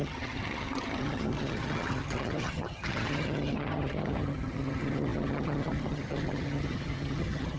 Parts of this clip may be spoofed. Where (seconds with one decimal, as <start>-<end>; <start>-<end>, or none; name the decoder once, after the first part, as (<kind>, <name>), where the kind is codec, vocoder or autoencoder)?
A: 0.0-7.6 (vocoder, HiFi-GAN)